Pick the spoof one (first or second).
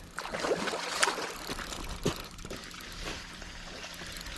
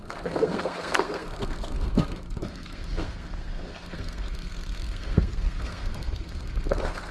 second